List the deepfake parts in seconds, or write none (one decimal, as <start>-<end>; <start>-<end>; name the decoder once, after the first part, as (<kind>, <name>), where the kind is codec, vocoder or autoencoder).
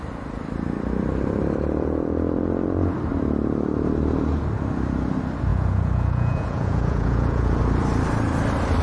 5.5-7.6 (vocoder, Vocos)